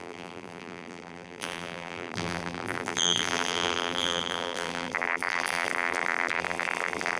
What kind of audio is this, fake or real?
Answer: fake